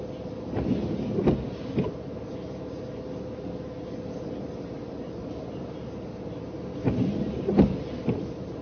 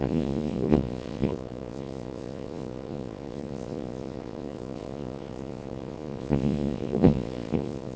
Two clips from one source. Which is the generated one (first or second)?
second